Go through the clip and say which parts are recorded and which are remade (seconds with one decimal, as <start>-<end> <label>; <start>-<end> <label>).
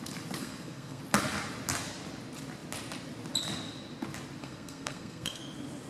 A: 0.0-0.4 recorded; 0.4-1.0 remade; 1.0-4.4 recorded; 4.4-5.4 remade; 5.4-5.9 recorded